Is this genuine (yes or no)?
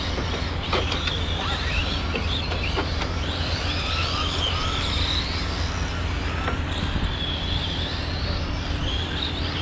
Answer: yes